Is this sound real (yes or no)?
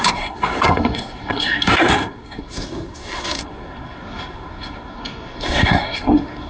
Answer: no